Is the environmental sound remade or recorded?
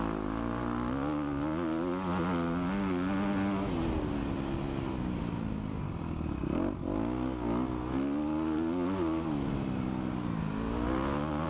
recorded